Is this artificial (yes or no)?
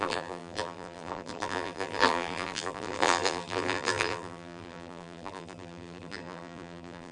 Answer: yes